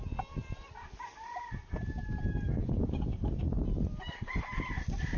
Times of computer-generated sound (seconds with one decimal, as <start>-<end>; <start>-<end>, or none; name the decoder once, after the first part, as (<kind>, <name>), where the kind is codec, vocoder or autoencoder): none